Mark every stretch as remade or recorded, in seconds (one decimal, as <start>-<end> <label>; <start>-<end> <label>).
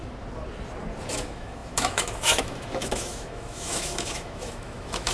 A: 0.0-1.1 recorded; 1.1-5.1 remade